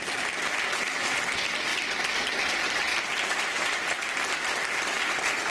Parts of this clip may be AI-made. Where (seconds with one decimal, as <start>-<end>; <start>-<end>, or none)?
2.9-3.9